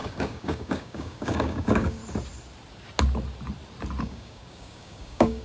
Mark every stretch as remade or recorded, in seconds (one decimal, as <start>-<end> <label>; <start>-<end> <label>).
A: 0.0-2.0 remade; 2.0-4.0 recorded; 4.0-5.4 remade